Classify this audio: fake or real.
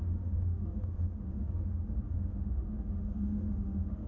fake